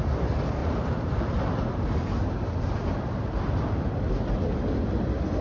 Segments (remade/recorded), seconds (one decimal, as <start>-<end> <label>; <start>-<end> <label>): 0.0-0.6 recorded; 0.6-3.8 remade; 3.8-5.4 recorded